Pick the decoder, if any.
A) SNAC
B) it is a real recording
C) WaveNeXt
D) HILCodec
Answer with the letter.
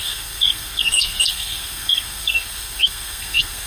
A